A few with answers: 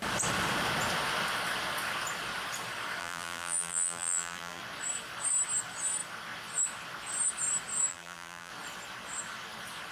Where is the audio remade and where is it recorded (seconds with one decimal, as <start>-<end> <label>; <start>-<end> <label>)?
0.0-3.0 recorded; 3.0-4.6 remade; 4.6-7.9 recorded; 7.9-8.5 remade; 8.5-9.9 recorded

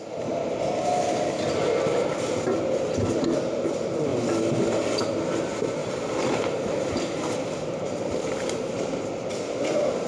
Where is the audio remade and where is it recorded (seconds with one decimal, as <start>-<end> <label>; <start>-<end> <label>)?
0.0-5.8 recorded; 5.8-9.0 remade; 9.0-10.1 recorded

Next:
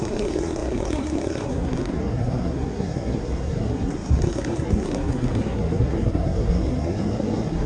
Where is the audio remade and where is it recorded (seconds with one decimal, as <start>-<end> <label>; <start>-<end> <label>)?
0.0-7.7 remade

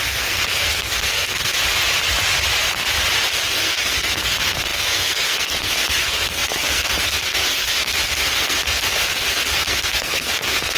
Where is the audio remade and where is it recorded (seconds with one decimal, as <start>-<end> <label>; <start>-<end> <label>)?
0.0-1.6 remade; 1.6-3.3 recorded; 3.3-10.8 remade